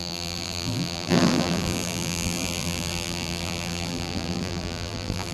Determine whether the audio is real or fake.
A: fake